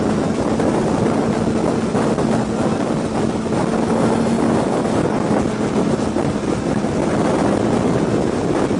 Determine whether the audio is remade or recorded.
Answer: recorded